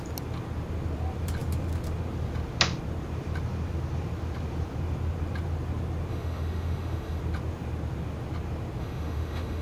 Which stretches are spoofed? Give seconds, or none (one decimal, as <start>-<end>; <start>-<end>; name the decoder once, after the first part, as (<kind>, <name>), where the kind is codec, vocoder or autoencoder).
6.1-7.2 (autoencoder, DAC-VAE); 8.8-9.6